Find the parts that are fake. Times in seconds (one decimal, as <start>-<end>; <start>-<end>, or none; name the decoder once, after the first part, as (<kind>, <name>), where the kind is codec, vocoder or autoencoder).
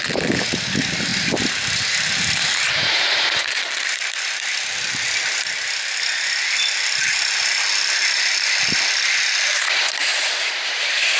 none